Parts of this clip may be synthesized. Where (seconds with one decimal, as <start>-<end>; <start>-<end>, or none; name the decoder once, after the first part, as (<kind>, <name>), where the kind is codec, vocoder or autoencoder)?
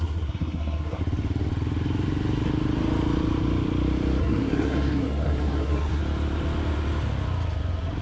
0.0-1.0 (codec, SNAC); 4.2-6.0